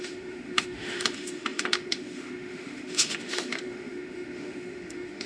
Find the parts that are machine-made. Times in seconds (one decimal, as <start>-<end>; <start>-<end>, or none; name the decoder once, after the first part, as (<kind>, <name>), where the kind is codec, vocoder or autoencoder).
0.0-5.3 (autoencoder, DAC-VAE)